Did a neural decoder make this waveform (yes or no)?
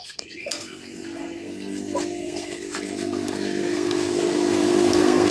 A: yes